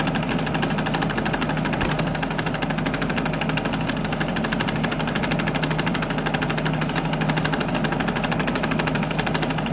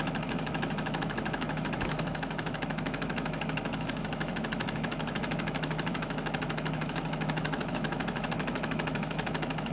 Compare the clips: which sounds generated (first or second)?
second